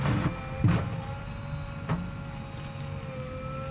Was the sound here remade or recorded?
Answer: recorded